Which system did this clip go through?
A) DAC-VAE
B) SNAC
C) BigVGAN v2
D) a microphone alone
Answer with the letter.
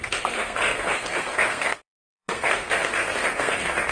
B